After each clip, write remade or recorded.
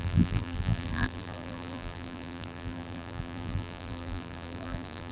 remade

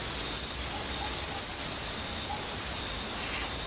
recorded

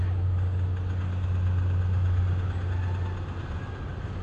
recorded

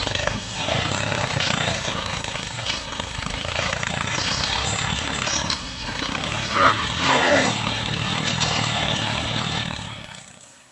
remade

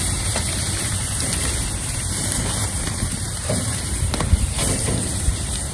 remade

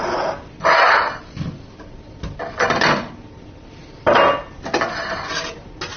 recorded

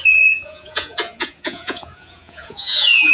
remade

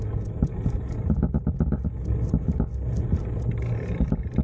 recorded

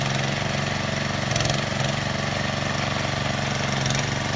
recorded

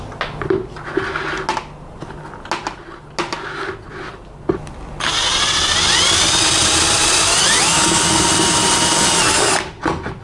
recorded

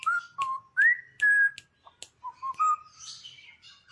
recorded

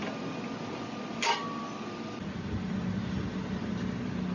recorded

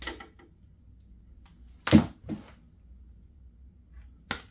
recorded